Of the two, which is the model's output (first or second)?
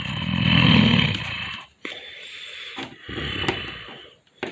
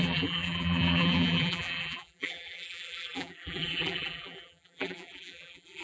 second